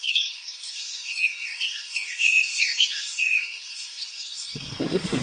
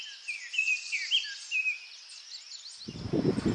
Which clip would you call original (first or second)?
second